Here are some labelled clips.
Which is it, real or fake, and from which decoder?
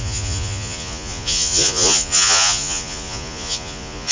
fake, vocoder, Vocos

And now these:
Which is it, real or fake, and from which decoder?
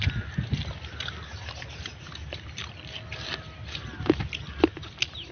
real